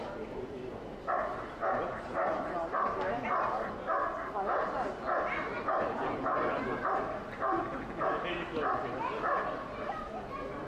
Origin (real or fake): real